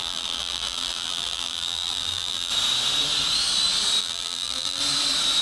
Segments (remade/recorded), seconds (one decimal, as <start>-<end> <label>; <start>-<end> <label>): 0.0-2.5 remade; 2.5-4.0 recorded; 4.0-4.8 remade; 4.8-5.4 recorded